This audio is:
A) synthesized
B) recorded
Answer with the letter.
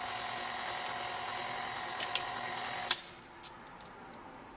B